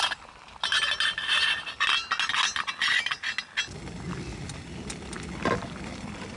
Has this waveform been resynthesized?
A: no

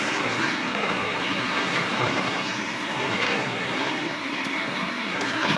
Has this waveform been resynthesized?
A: yes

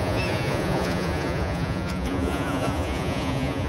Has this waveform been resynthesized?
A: yes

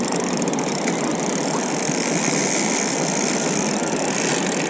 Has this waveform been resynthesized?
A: no